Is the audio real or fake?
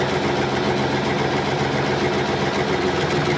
real